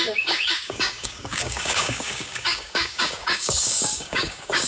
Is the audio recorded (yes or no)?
no